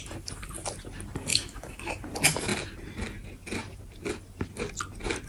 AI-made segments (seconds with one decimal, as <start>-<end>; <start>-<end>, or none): 1.3-1.9